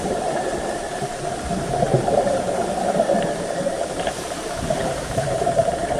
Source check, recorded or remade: remade